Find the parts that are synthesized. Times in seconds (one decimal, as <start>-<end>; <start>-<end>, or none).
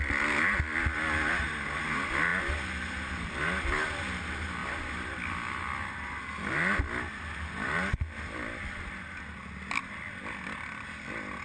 none